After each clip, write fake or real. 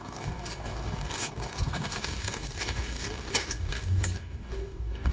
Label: fake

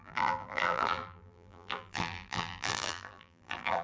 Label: fake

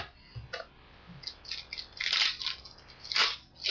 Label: real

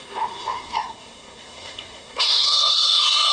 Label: fake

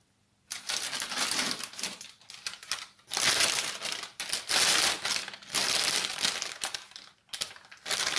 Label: real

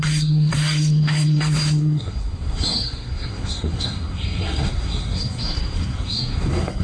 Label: fake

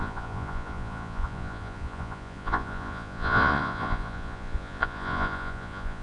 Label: fake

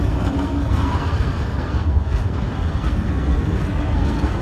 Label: fake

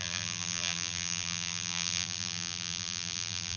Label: fake